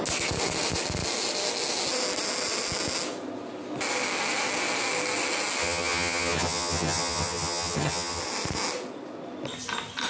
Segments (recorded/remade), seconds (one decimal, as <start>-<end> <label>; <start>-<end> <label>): 0.0-5.6 recorded; 5.6-8.2 remade; 8.2-10.1 recorded